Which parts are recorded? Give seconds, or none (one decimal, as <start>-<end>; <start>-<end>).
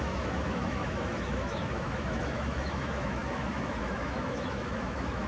none